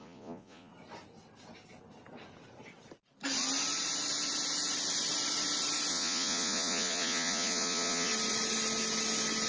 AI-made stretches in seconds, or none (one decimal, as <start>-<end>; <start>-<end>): 0.0-0.7; 5.9-8.1